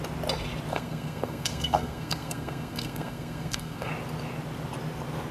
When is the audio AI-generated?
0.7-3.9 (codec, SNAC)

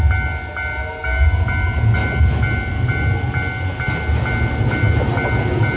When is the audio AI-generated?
0.8-1.4 (codec, DAC)